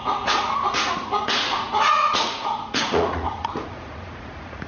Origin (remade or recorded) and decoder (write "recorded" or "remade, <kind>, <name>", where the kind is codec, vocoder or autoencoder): remade, vocoder, Vocos